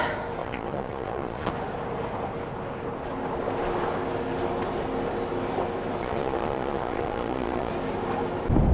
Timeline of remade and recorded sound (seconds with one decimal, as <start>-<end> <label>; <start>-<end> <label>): 0.0-0.4 recorded; 0.4-1.5 remade; 1.5-6.0 recorded; 6.0-7.7 remade; 7.7-8.7 recorded